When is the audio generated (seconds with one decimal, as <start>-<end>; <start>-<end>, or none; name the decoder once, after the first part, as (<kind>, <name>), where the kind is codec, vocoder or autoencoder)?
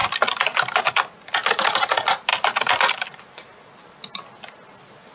none